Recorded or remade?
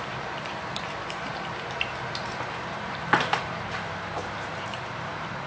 remade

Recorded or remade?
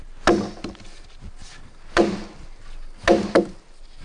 recorded